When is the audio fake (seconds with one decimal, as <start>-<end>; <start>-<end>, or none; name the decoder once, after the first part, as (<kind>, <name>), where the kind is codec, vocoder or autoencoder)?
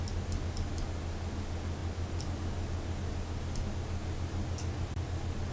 none